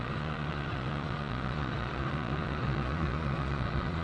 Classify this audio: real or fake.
fake